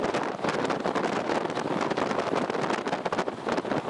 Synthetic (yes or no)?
no